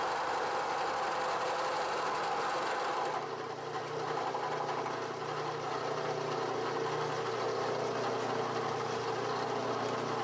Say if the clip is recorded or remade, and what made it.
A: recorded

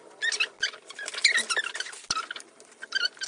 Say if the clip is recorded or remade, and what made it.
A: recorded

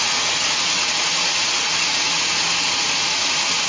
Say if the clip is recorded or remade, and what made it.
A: remade, vocoder, Vocos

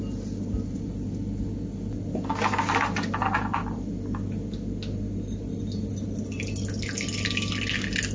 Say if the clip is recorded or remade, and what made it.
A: recorded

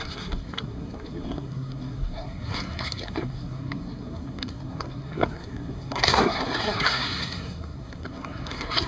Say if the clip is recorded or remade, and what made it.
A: remade, codec, SNAC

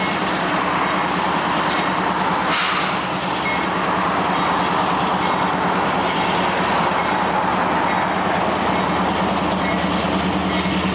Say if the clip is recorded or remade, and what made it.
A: recorded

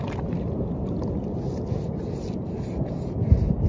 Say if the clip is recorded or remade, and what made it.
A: recorded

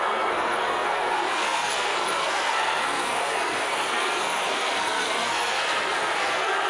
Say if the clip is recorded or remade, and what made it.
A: remade, codec, SNAC